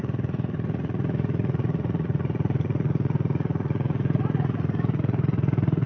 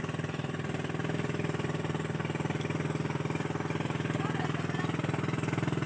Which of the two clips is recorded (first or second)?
second